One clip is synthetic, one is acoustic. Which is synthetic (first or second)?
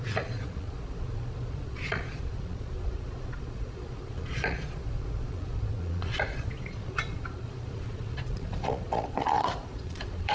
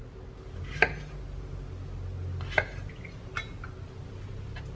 first